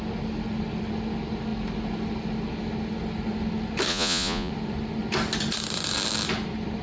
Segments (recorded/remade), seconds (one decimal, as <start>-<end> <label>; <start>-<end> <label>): 0.0-3.9 recorded; 3.9-4.5 remade; 4.5-6.8 recorded